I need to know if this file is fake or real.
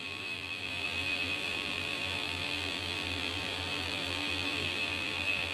fake